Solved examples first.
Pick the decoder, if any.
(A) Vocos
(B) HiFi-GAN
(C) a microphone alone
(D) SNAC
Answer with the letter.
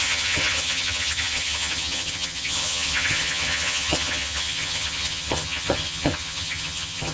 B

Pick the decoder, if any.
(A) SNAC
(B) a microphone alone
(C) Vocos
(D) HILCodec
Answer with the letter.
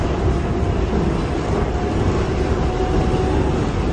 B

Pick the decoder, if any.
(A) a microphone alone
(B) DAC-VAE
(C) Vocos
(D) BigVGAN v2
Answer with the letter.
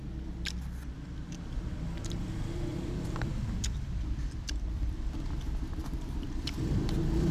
D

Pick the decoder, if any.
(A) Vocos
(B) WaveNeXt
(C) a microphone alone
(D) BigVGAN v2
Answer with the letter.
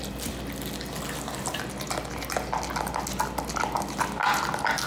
C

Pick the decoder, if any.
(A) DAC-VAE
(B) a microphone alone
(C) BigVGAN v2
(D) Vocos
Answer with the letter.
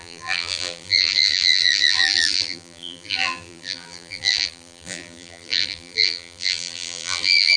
C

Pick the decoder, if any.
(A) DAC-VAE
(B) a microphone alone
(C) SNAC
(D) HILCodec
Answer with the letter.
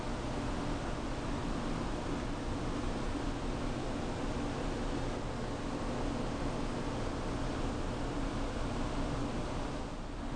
B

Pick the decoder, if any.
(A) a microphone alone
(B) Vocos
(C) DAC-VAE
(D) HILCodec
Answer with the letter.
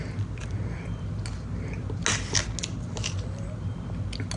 A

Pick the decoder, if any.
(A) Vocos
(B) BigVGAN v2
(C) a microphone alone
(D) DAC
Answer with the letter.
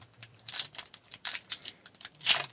B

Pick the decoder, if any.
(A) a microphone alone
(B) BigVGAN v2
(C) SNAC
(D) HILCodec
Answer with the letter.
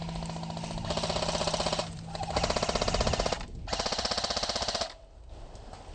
A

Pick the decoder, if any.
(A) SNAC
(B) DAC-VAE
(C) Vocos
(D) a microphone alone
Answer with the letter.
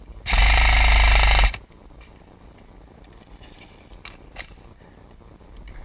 D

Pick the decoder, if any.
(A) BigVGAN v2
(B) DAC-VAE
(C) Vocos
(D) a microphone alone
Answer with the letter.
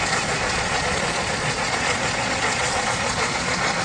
C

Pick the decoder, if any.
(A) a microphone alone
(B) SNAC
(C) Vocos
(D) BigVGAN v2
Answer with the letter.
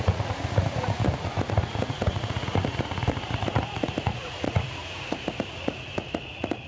C